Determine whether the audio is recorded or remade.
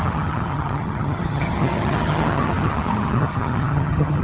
remade